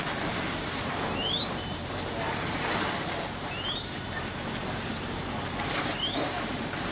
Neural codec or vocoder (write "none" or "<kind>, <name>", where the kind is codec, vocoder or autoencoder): vocoder, BigVGAN v2